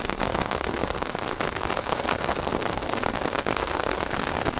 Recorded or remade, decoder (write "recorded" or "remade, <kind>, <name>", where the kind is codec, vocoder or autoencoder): remade, codec, SNAC